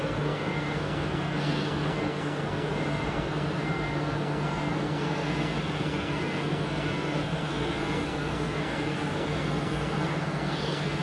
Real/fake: fake